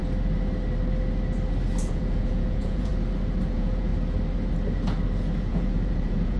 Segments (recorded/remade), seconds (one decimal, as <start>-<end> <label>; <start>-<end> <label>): 0.0-1.8 recorded; 1.8-2.9 remade; 2.9-3.5 recorded; 3.5-3.9 remade; 3.9-5.5 recorded; 5.5-6.4 remade